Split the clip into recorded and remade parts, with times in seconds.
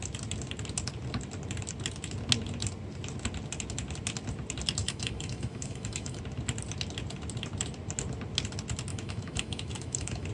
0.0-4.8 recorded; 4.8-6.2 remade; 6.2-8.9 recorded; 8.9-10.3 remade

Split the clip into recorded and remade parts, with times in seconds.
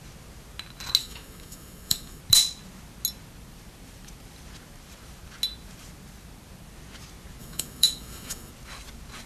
0.0-1.0 recorded; 1.0-2.2 remade; 2.2-7.4 recorded; 7.4-8.5 remade; 8.5-9.3 recorded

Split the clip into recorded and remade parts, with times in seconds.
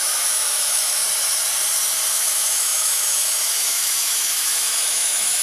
0.0-1.0 remade; 1.0-2.1 recorded; 2.1-5.4 remade